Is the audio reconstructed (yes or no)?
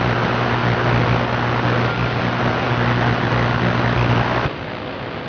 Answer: no